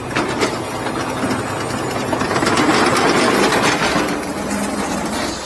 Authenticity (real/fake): real